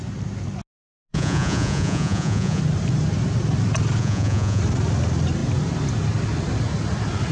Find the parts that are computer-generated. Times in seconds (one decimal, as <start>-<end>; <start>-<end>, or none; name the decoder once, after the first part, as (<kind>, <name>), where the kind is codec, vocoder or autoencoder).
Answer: 1.1-2.6 (vocoder, Vocos); 4.0-4.6